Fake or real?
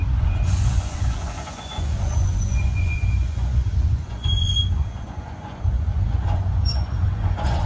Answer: fake